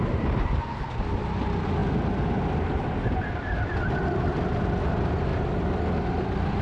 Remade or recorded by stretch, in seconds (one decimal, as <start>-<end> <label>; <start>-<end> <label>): 0.0-6.6 recorded